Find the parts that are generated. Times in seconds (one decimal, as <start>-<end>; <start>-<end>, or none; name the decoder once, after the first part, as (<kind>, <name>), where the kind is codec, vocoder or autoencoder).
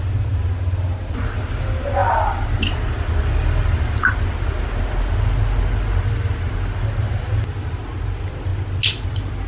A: none